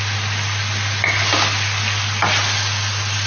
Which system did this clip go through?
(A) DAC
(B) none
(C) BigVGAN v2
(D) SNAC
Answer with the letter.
B